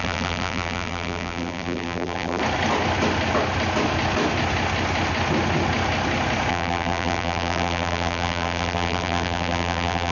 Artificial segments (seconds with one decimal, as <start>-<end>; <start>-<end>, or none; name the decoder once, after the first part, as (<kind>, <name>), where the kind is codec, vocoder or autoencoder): 0.0-2.4 (vocoder, BigVGAN v2); 6.5-10.1